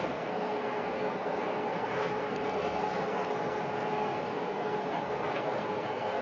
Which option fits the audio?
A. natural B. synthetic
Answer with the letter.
B